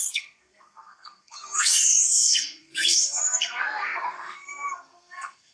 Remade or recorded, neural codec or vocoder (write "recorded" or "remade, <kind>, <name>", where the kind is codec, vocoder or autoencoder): remade, codec, SNAC